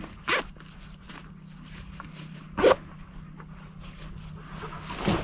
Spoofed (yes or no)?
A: no